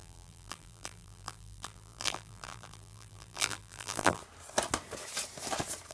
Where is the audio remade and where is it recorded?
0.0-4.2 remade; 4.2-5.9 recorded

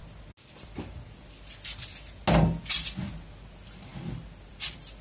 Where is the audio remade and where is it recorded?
0.0-5.0 recorded

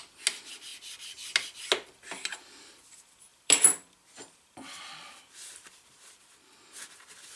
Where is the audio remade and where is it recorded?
0.0-3.3 recorded; 3.3-7.4 remade

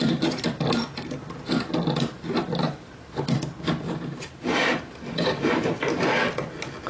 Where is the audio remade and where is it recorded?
0.0-2.4 recorded; 2.4-3.4 remade; 3.4-6.9 recorded

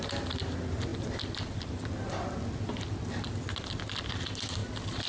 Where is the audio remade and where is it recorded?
0.0-5.1 recorded